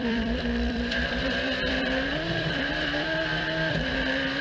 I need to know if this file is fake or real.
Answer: fake